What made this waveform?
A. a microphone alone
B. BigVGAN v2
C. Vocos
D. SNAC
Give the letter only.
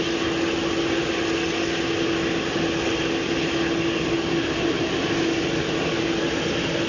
A